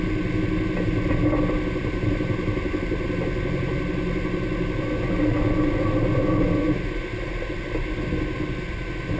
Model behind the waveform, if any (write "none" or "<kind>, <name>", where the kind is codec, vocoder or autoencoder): none